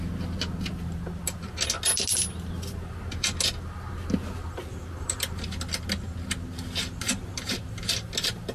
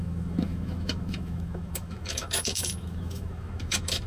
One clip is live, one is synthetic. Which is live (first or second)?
first